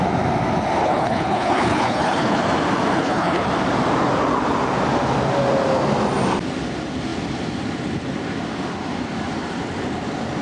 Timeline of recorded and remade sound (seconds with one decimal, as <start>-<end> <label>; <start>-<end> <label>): 0.0-0.8 recorded; 0.8-2.4 remade; 2.4-3.0 recorded; 3.0-3.5 remade; 3.5-10.4 recorded